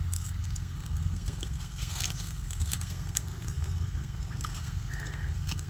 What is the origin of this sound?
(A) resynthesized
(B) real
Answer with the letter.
A